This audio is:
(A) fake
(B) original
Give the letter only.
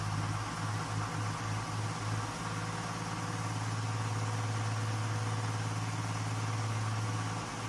B